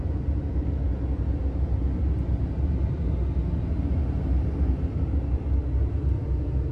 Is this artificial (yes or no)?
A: no